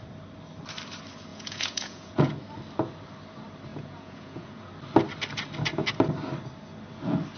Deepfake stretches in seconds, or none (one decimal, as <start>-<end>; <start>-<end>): 1.3-2.3; 3.7-4.7